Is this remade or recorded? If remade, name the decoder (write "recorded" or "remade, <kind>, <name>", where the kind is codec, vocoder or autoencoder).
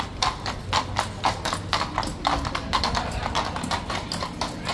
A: recorded